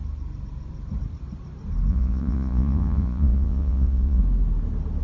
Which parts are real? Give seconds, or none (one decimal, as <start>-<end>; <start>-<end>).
0.0-1.9; 4.2-5.0